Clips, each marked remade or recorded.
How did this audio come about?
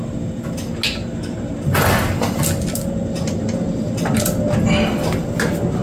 recorded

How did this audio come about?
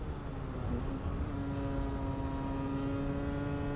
recorded